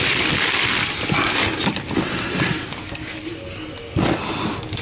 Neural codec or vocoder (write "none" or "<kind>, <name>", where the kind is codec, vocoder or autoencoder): none